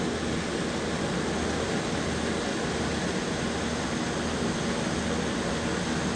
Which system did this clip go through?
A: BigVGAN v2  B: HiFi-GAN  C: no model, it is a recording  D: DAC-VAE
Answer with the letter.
C